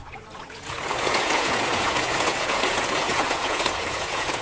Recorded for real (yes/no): no